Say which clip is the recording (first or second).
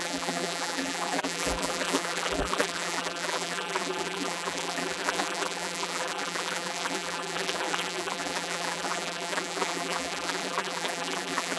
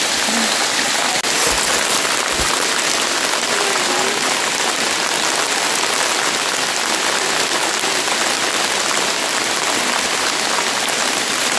second